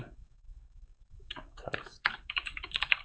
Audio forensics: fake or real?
fake